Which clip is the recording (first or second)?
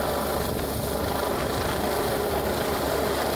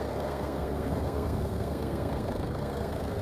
first